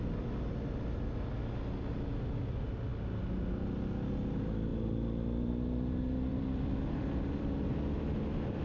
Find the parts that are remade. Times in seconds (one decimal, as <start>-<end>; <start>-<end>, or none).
6.3-8.6